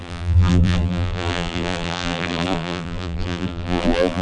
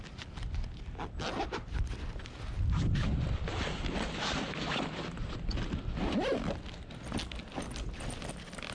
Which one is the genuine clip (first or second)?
second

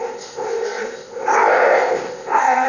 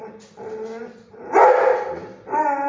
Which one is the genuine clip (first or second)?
second